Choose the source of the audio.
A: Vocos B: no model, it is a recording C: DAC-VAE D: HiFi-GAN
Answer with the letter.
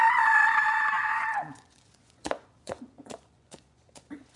A